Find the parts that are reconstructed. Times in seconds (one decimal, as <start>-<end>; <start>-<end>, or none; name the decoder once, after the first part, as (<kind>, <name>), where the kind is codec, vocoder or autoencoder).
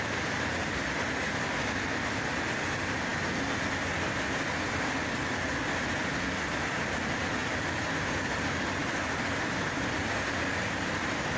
none